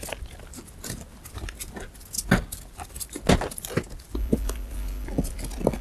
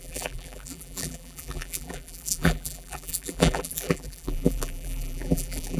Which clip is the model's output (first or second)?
second